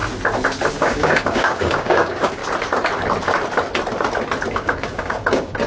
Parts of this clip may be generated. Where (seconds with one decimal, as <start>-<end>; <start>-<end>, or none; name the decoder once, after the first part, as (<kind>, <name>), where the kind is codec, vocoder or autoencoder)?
0.7-2.4 (codec, DAC); 4.5-5.7

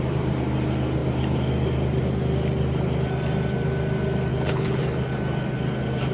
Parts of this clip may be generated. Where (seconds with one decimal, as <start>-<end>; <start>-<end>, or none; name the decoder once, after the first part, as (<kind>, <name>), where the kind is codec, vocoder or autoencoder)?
4.3-4.8 (codec, HILCodec)